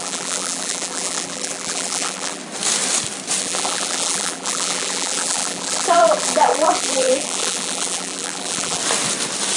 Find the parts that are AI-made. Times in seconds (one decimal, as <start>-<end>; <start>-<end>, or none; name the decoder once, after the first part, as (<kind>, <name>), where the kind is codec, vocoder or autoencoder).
0.0-2.4 (vocoder, BigVGAN v2); 3.4-8.8